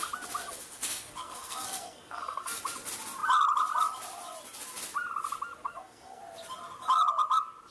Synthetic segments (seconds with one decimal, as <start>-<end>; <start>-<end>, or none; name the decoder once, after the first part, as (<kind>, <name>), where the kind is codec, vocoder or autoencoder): 0.4-2.6 (codec, SNAC); 5.6-6.2

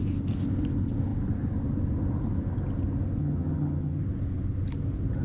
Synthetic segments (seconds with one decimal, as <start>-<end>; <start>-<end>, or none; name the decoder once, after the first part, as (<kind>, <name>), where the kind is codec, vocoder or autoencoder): 3.2-4.0 (vocoder, HiFi-GAN)

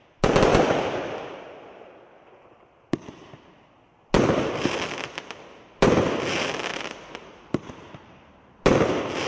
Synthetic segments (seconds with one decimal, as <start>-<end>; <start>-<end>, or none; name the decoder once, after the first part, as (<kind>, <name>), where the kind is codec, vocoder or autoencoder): 6.7-8.5 (vocoder, BigVGAN v2)

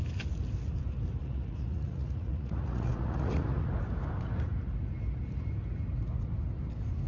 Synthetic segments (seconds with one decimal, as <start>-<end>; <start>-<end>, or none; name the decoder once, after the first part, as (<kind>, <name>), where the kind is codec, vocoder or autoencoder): 1.2-3.7 (vocoder, Vocos)

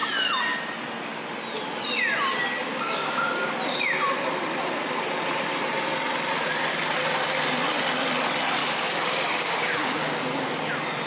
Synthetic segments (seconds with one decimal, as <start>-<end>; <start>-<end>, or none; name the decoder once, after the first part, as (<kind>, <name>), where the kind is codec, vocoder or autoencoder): 2.6-3.5 (codec, DAC); 8.6-10.7

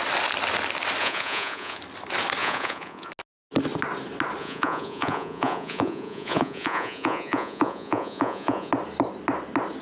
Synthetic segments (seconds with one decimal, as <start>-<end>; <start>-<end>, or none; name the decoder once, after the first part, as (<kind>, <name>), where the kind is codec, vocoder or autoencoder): 1.0-1.8 (vocoder, Vocos); 2.4-3.1; 4.4-8.7